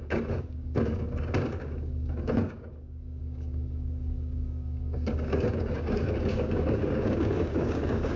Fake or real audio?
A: fake